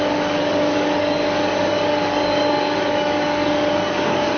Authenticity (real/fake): fake